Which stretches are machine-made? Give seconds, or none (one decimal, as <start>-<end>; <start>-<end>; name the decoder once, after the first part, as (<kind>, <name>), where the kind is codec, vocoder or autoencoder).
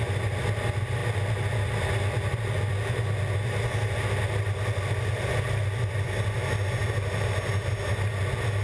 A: none